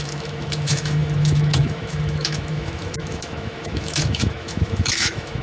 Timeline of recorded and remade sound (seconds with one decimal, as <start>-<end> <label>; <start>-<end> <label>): 0.0-5.4 remade